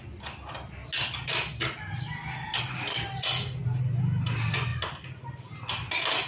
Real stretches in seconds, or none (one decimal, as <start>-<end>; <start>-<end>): 0.0-6.3